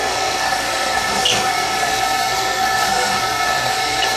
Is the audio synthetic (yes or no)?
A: yes